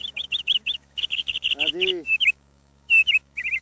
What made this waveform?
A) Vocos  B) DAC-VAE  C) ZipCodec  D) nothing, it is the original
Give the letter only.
B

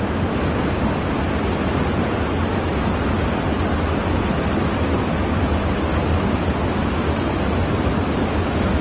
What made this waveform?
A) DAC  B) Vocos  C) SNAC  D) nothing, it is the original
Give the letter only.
D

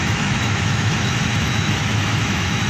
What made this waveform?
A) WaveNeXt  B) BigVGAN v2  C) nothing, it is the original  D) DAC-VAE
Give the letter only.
D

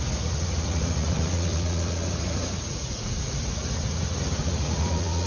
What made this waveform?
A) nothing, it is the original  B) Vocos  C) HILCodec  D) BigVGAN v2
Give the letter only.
B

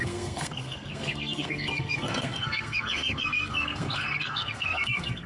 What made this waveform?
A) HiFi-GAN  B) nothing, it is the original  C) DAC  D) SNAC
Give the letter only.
D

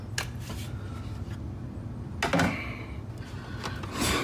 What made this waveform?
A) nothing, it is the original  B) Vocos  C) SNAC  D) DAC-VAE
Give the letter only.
A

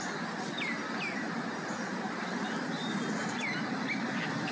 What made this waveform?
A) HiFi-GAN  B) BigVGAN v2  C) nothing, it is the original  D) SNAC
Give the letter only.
C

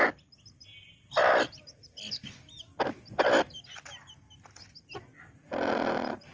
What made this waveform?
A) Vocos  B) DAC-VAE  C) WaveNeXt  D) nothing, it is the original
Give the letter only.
D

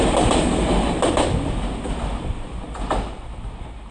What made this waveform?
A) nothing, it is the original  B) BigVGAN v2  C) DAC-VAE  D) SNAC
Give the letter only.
A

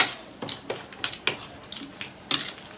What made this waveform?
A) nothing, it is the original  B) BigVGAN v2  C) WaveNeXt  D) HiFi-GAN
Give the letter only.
A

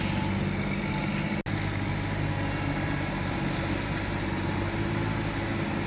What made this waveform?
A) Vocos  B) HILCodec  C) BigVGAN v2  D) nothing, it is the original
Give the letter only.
D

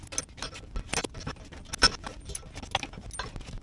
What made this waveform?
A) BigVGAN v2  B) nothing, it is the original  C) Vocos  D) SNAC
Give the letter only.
B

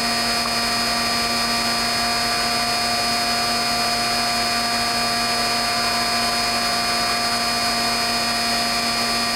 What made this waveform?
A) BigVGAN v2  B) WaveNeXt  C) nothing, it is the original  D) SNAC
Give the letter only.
C